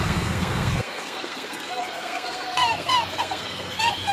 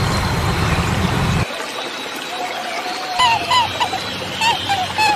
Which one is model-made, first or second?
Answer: first